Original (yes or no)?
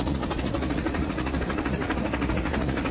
no